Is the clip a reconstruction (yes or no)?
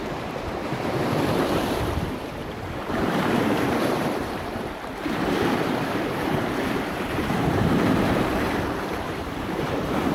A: yes